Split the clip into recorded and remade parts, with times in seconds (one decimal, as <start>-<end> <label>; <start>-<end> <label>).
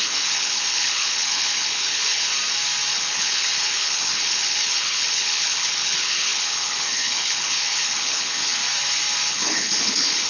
0.0-2.3 remade; 2.3-2.9 recorded; 2.9-8.6 remade; 8.6-9.3 recorded; 9.3-10.3 remade